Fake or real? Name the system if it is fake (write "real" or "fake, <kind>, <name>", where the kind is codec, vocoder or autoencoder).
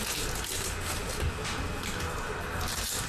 real